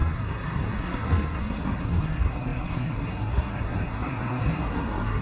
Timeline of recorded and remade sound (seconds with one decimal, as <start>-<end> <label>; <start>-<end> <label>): 0.0-5.2 remade